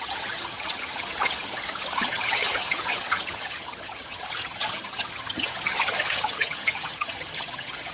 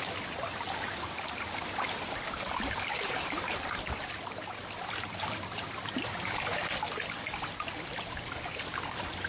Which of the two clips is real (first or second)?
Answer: second